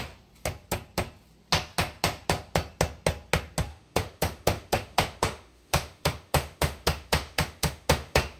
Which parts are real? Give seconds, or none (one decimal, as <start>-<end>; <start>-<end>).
0.0-3.7